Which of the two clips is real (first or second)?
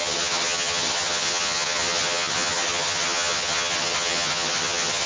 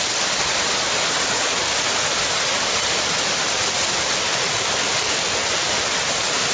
second